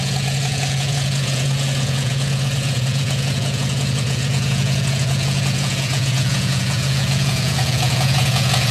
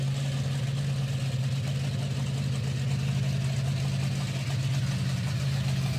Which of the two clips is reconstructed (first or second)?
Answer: first